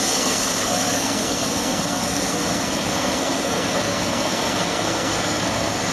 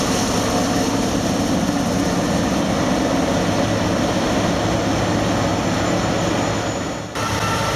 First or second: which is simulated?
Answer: first